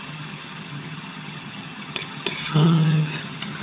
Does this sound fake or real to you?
fake